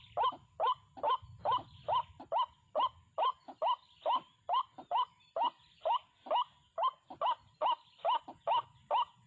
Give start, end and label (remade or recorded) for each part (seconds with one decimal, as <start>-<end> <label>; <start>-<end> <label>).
0.0-6.6 recorded; 6.6-7.5 remade; 7.5-9.3 recorded